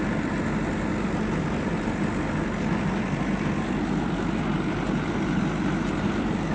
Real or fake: real